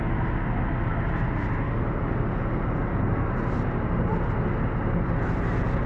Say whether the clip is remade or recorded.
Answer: recorded